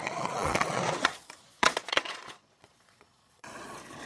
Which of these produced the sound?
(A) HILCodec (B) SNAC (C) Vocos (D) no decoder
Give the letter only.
C